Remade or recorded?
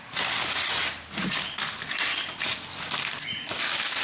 recorded